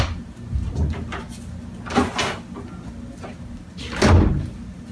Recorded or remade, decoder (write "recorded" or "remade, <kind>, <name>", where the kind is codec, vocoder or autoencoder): recorded